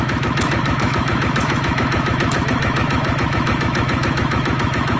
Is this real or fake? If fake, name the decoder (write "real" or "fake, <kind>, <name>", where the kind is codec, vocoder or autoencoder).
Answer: fake, autoencoder, DAC-VAE